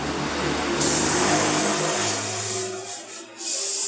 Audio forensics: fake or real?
real